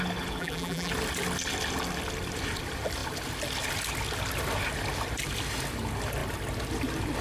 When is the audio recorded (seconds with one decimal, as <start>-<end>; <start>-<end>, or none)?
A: 0.0-0.4; 0.9-7.2